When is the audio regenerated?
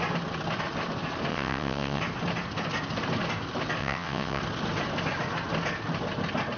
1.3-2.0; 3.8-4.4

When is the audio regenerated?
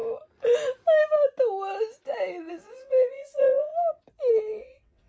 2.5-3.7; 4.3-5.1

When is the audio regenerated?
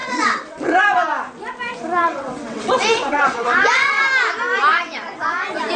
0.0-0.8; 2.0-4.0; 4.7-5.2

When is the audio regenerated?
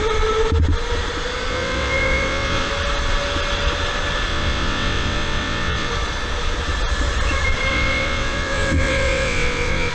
1.5-2.7; 4.3-5.9; 7.7-9.9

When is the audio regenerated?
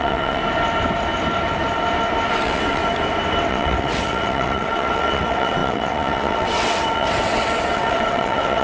0.0-0.4; 2.3-2.8; 3.5-8.6